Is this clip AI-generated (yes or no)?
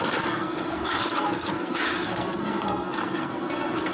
yes